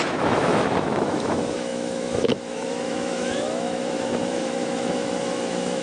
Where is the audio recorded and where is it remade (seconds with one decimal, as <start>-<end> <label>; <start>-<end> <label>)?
0.0-5.8 remade